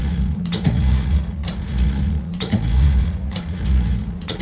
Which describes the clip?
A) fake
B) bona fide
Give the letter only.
A